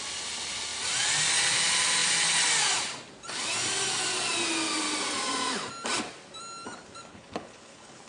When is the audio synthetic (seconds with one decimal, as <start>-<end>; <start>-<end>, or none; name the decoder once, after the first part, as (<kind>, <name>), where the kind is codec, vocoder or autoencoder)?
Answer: 7.1-8.1 (codec, HILCodec)

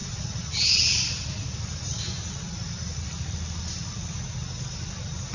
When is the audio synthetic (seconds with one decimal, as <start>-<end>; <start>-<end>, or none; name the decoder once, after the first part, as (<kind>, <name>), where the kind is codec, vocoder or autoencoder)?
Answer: none

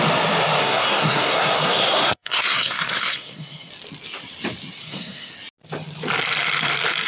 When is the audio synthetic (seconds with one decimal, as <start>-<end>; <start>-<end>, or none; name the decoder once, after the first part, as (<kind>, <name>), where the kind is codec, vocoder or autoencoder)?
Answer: 0.6-3.7 (codec, SNAC); 4.8-5.3

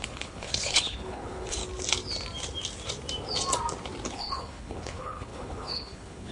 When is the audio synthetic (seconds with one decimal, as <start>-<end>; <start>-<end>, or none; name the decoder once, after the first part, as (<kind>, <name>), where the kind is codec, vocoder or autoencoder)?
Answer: 0.0-1.6 (codec, HILCodec); 4.1-6.3